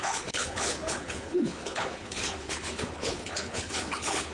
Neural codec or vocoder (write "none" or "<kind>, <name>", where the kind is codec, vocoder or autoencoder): codec, HILCodec